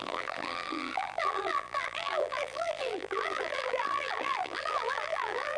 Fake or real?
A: fake